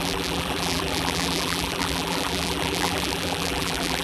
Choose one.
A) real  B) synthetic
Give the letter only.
B